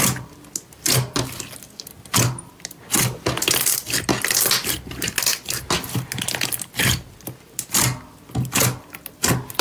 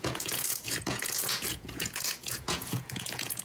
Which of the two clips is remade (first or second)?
second